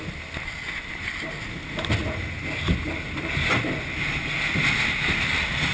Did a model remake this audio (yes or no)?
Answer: no